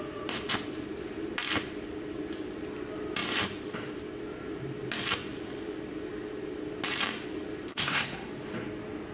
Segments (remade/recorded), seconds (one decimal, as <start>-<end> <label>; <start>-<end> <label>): 0.0-7.7 recorded; 7.7-8.3 remade; 8.3-9.1 recorded